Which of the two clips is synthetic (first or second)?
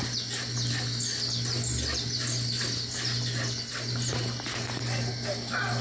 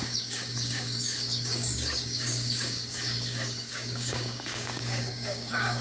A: second